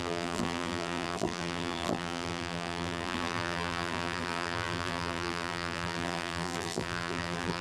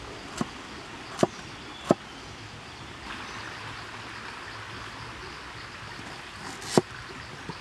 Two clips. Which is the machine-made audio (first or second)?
first